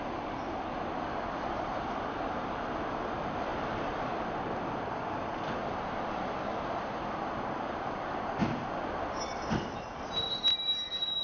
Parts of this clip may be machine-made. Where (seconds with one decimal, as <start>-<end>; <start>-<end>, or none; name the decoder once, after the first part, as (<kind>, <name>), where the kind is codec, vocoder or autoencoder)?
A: 0.0-5.6 (vocoder, BigVGAN v2); 6.8-11.2